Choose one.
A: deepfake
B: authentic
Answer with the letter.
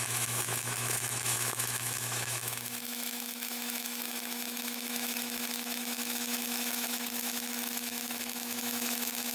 A